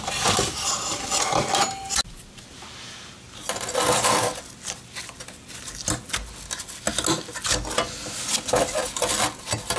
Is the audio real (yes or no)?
yes